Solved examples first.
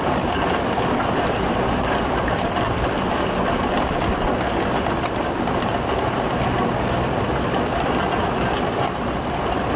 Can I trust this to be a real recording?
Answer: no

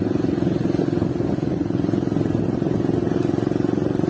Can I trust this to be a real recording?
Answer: yes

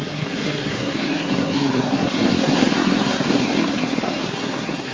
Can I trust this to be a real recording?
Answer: no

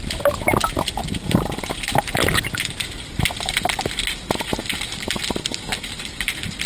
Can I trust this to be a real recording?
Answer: yes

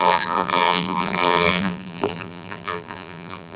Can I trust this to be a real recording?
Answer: no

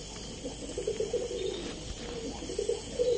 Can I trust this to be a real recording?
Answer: yes